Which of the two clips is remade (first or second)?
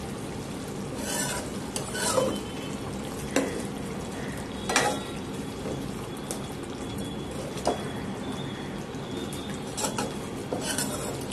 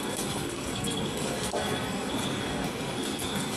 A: second